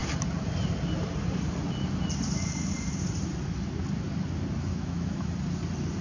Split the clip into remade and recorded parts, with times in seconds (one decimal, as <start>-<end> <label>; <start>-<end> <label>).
0.0-4.7 recorded; 4.7-5.3 remade; 5.3-6.0 recorded